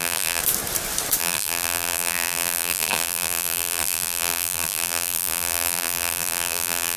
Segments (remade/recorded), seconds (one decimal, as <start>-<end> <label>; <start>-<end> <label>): 0.0-0.4 remade; 0.4-1.2 recorded; 1.2-7.0 remade